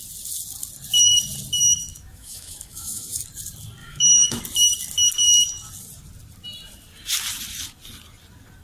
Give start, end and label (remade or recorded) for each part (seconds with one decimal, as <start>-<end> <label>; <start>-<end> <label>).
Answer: 0.0-1.9 recorded; 1.9-3.2 remade; 3.2-3.8 recorded; 3.8-4.4 remade; 4.4-8.6 recorded